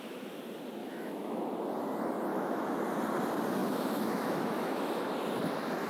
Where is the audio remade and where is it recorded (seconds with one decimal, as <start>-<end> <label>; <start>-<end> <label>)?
0.0-0.8 recorded; 0.8-1.4 remade; 1.4-2.3 recorded; 2.3-2.8 remade; 2.8-3.6 recorded; 3.6-5.1 remade; 5.1-5.9 recorded